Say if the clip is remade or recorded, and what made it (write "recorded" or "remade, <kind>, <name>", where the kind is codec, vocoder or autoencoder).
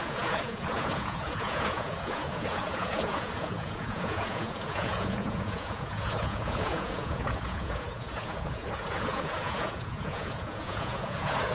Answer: remade, vocoder, Vocos